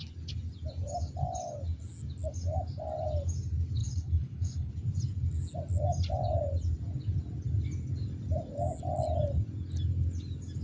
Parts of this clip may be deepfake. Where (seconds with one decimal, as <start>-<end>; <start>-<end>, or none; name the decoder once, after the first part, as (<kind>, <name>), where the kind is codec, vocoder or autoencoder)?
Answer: 3.8-4.7 (codec, HILCodec)